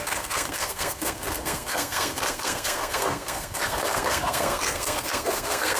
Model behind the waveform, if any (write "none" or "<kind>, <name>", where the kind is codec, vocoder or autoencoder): codec, SNAC